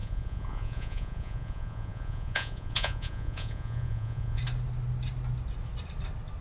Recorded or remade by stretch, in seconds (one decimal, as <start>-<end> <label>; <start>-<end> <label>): 0.0-4.4 remade; 4.4-6.4 recorded